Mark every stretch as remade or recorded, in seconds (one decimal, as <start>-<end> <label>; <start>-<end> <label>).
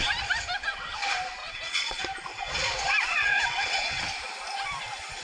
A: 0.0-1.4 recorded; 1.4-2.0 remade; 2.0-3.1 recorded; 3.1-4.0 remade; 4.0-5.2 recorded